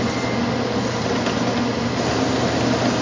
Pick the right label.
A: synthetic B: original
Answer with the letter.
B